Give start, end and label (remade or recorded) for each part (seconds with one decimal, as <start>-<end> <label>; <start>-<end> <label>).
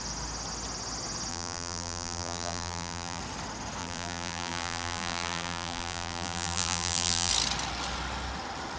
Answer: 0.0-1.3 recorded; 1.3-3.2 remade; 3.2-3.8 recorded; 3.8-7.3 remade; 7.3-8.8 recorded